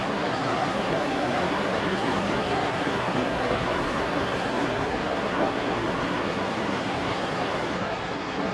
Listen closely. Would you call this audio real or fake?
fake